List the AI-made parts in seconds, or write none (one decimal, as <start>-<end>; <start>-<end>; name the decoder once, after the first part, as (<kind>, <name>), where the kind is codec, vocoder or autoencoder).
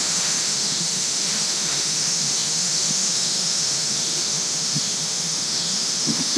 0.0-6.4 (autoencoder, DAC-VAE)